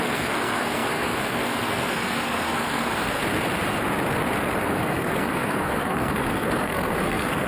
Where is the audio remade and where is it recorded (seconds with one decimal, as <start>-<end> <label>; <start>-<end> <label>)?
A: 0.0-3.2 remade; 3.2-4.6 recorded; 4.6-7.5 remade